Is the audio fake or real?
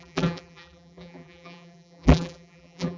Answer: fake